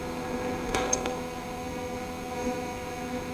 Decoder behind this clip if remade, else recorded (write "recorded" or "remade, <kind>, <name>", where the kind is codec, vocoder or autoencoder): remade, codec, SNAC